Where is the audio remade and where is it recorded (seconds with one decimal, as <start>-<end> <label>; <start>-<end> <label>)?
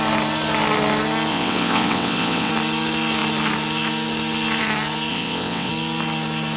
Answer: 0.0-1.3 recorded; 1.3-2.5 remade; 2.5-5.1 recorded; 5.1-5.7 remade; 5.7-6.6 recorded